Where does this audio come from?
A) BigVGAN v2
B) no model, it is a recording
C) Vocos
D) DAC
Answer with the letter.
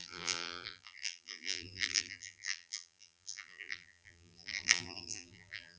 A